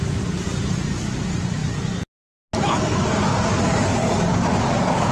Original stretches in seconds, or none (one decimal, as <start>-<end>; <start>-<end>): 0.0-4.0